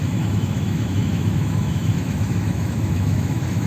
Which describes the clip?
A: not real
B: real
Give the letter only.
A